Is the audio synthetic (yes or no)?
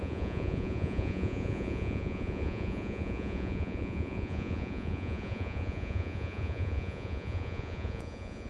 yes